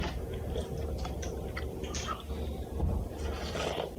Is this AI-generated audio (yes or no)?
no